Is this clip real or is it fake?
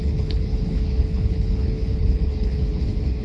fake